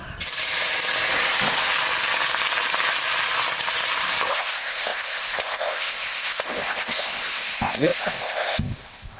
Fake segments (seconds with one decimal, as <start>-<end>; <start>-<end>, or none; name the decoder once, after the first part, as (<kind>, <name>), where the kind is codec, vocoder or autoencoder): 4.3-9.2 (codec, ZipCodec)